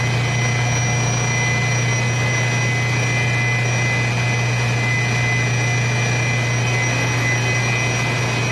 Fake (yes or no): no